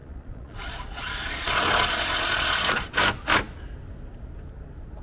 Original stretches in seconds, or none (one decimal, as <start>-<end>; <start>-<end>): 3.0-5.0